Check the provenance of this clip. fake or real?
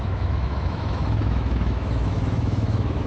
fake